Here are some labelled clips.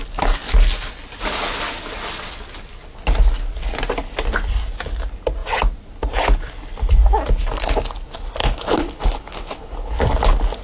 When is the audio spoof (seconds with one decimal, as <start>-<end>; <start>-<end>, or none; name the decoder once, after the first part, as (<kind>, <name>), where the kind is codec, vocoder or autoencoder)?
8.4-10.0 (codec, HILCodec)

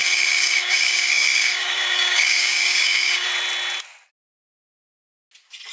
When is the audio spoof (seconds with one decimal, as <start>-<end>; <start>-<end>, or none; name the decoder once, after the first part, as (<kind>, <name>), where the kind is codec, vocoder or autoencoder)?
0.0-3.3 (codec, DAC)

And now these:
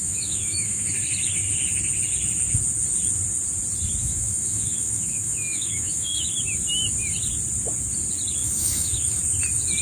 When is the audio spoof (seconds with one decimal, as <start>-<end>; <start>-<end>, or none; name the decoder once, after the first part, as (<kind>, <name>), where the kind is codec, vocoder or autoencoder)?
0.0-0.9 (autoencoder, DAC-VAE); 4.0-6.3; 8.4-9.2